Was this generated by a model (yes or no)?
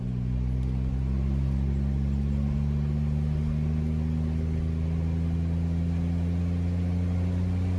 no